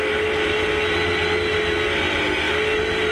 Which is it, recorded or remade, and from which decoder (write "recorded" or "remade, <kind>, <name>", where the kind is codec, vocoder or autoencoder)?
recorded